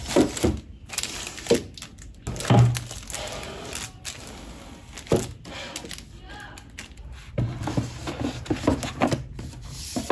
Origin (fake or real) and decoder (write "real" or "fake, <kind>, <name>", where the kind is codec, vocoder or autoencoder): real